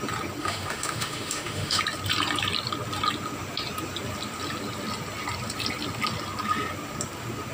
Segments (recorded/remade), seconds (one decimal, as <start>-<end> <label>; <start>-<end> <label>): 0.0-0.4 recorded; 0.4-1.8 remade; 1.8-7.5 recorded